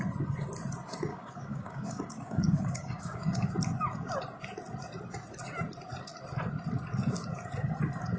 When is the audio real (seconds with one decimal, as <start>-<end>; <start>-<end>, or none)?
0.0-1.1; 3.5-8.2